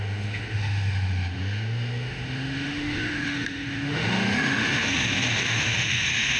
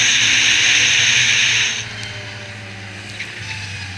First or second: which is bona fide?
second